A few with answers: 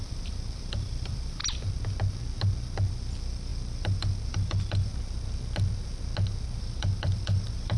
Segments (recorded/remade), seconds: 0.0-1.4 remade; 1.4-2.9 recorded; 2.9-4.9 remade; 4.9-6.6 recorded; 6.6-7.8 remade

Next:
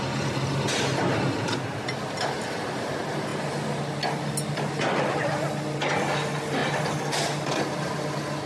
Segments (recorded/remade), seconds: 0.0-8.5 recorded

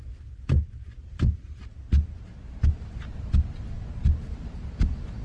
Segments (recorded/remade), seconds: 0.0-1.1 recorded; 1.1-1.6 remade; 1.6-5.2 recorded

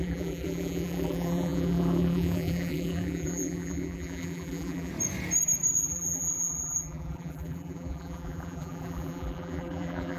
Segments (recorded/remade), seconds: 0.0-4.9 remade; 4.9-5.8 recorded; 5.8-10.2 remade

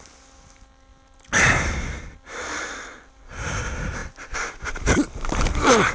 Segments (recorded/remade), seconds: 0.0-5.9 recorded

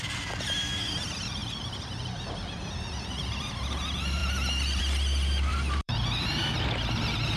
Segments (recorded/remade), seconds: 0.0-1.4 recorded; 1.4-3.2 remade; 3.2-5.5 recorded; 5.5-6.8 remade; 6.8-7.4 recorded

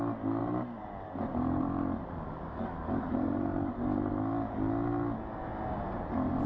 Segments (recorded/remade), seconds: 0.0-0.4 recorded; 0.4-4.1 remade; 4.1-5.5 recorded; 5.5-6.5 remade